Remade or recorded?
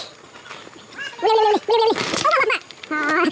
recorded